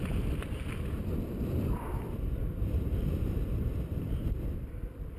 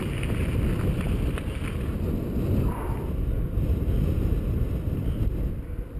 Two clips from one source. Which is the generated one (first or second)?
first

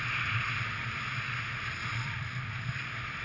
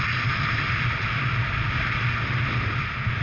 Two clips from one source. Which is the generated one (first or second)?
second